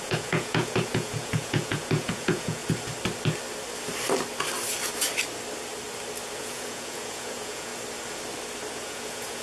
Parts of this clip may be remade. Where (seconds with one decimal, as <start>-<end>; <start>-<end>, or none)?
0.0-2.6; 6.4-7.7; 8.7-9.4